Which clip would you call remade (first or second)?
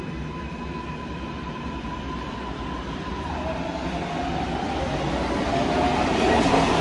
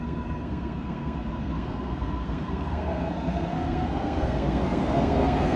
second